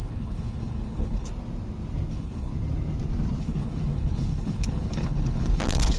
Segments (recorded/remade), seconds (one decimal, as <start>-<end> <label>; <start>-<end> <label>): 0.0-1.3 remade; 1.3-2.1 recorded; 2.1-2.5 remade; 2.5-3.4 recorded; 3.4-6.0 remade